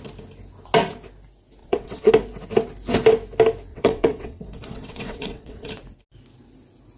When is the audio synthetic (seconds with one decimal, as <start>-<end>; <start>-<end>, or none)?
1.6-2.1; 3.7-5.7